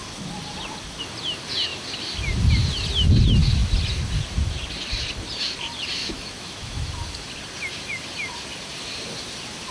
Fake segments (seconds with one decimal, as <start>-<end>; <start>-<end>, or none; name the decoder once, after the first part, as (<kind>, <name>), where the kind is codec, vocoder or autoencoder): 6.0-6.8 (autoencoder, DAC-VAE)